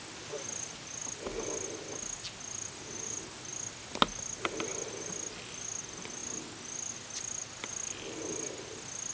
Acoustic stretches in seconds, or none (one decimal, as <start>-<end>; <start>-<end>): 0.0-9.1